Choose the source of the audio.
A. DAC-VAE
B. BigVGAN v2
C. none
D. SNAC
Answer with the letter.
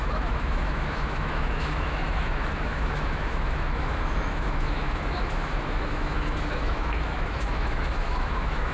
A